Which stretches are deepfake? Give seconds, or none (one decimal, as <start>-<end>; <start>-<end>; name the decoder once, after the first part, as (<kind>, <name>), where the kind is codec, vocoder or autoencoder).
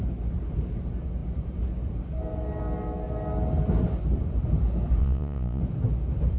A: 5.0-5.6 (vocoder, Vocos)